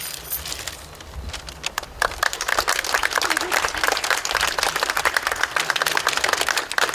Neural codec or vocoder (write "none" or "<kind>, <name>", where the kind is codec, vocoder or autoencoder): none